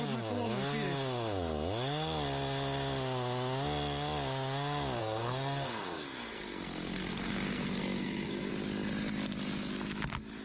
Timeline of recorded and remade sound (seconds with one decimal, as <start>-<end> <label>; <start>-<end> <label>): 0.0-5.0 recorded; 5.0-8.5 remade; 8.5-10.4 recorded